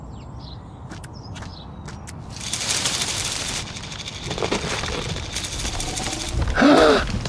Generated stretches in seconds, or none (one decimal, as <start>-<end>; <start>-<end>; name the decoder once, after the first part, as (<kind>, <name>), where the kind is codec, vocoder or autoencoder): none